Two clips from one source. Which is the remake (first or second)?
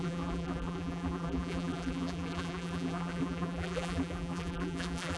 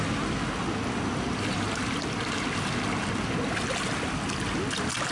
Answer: first